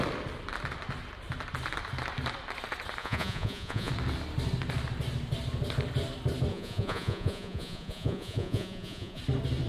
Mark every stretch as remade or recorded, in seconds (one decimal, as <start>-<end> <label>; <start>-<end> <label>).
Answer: 0.0-3.0 recorded; 3.0-3.9 remade; 3.9-6.5 recorded; 6.5-9.2 remade; 9.2-9.7 recorded